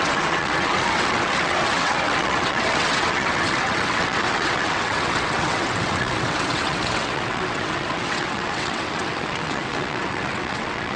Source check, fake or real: fake